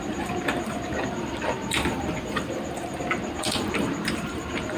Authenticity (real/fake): fake